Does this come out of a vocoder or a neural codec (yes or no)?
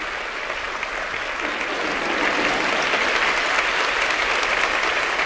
no